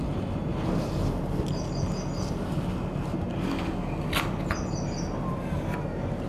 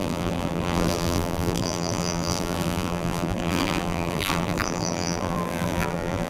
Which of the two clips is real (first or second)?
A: first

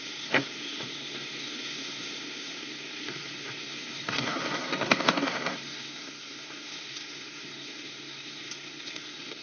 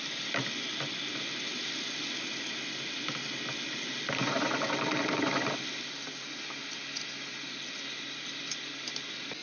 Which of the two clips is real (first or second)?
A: second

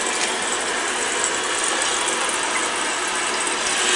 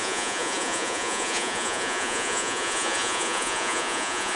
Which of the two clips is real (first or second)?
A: first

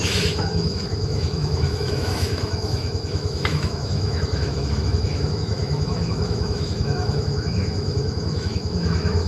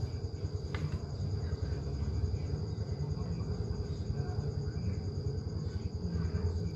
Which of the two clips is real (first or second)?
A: second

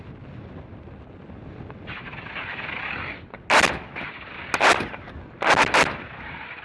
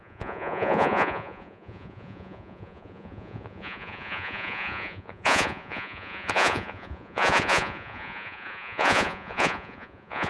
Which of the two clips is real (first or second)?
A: first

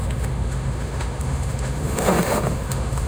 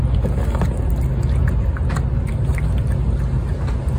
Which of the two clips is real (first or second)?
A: second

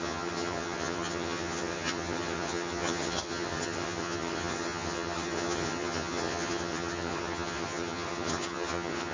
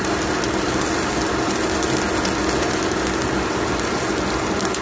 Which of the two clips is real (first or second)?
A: second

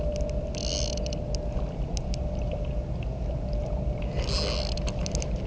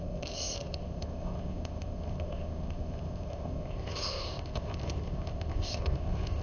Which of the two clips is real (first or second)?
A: first